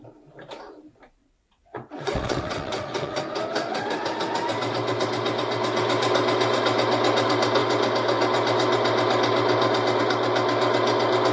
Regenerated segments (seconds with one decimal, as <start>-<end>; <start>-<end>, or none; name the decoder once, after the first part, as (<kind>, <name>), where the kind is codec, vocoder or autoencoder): 1.2-3.2 (vocoder, WaveNeXt)